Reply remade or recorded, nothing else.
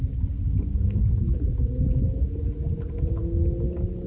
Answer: recorded